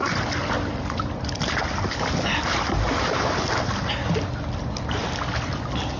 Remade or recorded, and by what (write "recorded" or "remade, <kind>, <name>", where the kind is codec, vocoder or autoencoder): recorded